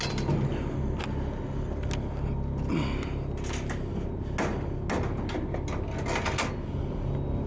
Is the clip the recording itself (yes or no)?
yes